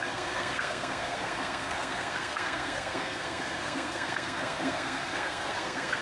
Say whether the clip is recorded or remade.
remade